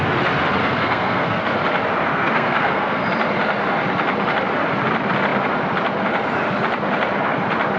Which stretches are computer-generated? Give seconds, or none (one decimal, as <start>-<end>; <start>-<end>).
0.6-1.4; 2.1-3.0